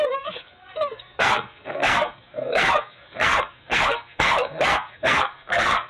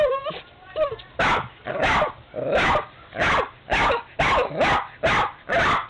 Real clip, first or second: second